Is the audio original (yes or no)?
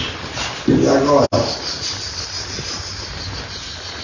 yes